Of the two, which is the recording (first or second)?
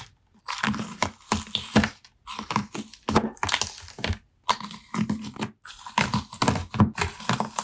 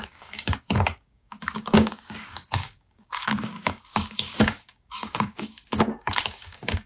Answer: first